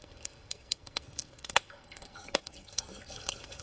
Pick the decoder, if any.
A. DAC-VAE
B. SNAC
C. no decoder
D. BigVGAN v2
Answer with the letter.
B